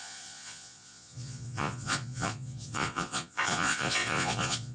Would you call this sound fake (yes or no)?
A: yes